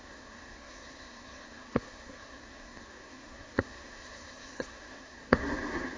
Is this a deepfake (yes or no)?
yes